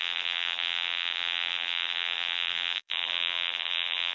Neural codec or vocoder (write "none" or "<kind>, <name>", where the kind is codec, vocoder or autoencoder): vocoder, BigVGAN v2